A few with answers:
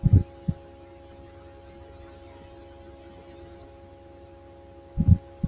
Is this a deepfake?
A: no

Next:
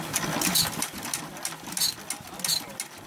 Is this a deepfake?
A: no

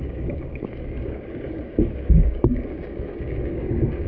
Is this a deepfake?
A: yes